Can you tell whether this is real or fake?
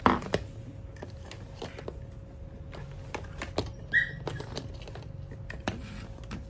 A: real